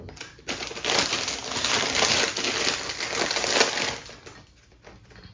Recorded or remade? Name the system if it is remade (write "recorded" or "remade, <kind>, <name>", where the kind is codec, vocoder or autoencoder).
recorded